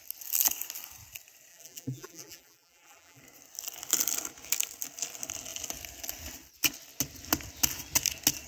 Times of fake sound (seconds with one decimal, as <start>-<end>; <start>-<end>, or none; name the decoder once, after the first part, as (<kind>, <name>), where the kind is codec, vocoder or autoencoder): 1.5-3.2 (vocoder, BigVGAN v2)